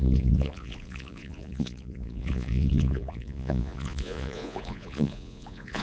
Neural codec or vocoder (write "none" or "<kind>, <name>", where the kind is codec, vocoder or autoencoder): vocoder, Vocos